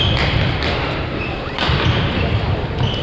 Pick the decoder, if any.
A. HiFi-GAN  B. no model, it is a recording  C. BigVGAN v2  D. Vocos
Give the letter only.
C